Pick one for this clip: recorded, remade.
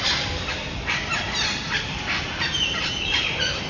remade